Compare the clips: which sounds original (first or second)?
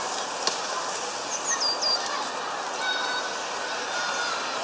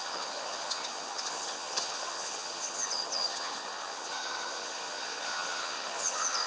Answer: first